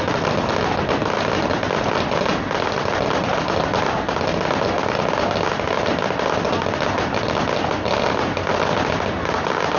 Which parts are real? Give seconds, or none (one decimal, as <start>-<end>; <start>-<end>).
0.0-9.8